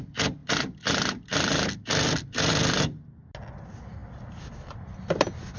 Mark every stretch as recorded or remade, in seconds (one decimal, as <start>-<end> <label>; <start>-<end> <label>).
0.0-5.6 recorded